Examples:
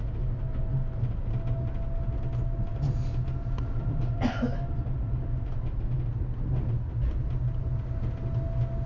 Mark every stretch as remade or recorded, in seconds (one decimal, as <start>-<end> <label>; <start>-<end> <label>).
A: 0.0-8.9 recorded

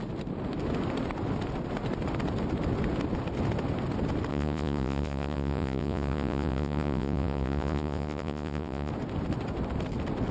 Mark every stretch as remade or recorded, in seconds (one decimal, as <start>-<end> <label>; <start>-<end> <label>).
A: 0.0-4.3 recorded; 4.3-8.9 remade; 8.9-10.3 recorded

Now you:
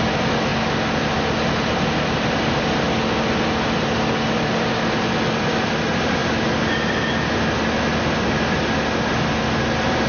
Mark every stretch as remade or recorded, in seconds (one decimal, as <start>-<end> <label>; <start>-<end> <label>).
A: 0.0-10.1 recorded

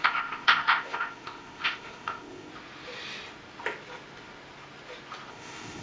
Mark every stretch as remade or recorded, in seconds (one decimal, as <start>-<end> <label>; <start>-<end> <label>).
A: 0.0-2.5 remade; 2.5-5.3 recorded; 5.3-5.8 remade